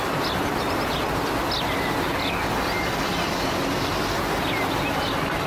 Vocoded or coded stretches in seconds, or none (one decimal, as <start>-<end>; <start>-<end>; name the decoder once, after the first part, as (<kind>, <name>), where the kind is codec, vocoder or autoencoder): none